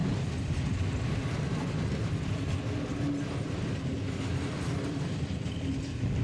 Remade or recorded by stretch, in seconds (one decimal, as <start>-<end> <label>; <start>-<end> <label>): 0.0-6.2 recorded